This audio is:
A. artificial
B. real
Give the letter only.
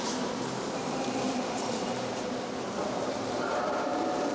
A